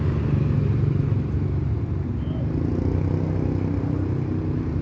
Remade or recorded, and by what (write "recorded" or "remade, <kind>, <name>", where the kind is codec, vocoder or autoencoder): recorded